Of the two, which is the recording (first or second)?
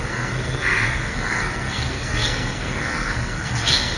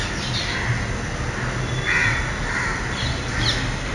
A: second